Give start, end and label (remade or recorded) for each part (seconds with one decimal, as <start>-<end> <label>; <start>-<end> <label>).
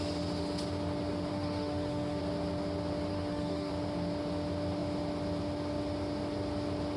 0.0-1.3 recorded; 1.3-2.2 remade; 2.2-3.1 recorded; 3.1-3.7 remade; 3.7-7.0 recorded